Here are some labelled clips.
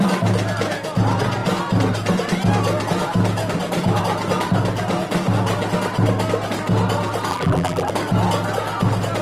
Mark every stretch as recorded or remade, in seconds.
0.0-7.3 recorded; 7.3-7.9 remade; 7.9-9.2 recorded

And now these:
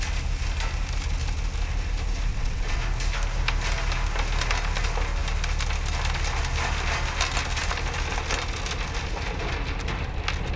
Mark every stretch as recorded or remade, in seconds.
0.0-2.3 recorded; 2.3-2.8 remade; 2.8-10.6 recorded

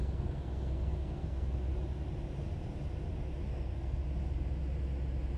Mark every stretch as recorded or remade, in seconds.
0.0-1.7 remade; 1.7-3.5 recorded; 3.5-4.0 remade; 4.0-5.4 recorded